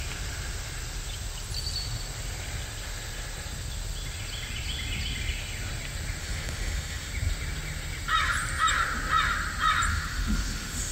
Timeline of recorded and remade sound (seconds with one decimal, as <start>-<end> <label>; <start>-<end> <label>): 0.0-6.2 recorded; 6.2-7.1 remade; 7.1-9.9 recorded; 9.9-10.9 remade